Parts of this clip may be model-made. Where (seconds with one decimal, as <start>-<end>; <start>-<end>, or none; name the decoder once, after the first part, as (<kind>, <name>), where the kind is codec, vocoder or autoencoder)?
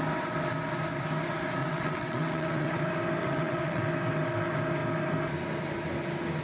1.6-2.8 (vocoder, WaveNeXt); 3.2-3.8